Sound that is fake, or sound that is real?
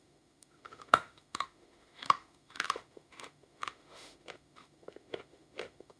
fake